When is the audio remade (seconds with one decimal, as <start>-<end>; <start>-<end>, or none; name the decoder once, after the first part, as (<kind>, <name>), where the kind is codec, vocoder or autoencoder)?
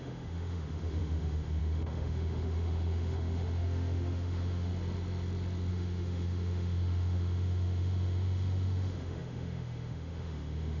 0.0-4.7 (autoencoder, DAC-VAE); 5.7-10.8